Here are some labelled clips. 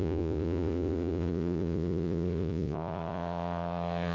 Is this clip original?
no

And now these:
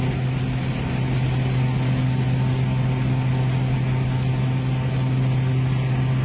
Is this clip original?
yes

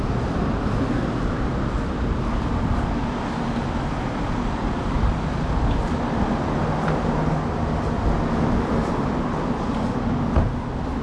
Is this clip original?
yes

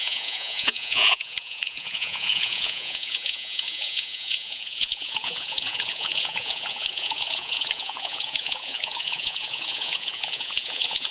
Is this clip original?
no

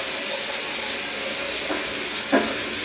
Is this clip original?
yes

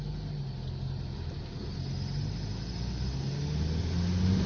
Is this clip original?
yes